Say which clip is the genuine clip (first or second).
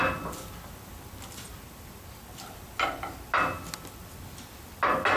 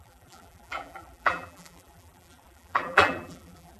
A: first